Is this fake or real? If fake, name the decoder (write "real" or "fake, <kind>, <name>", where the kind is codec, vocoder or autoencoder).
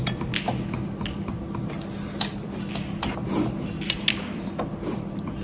real